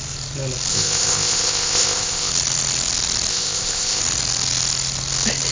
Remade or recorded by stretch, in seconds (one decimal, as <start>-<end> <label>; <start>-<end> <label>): 0.0-0.7 recorded; 0.7-2.3 remade; 2.3-3.3 recorded; 3.3-4.0 remade; 4.0-5.5 recorded